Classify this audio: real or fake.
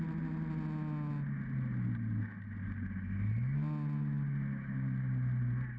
real